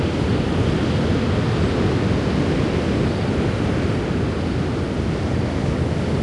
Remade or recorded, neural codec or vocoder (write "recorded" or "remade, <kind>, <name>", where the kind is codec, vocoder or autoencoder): recorded